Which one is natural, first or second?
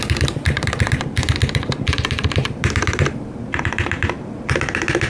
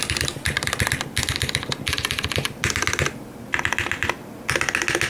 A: second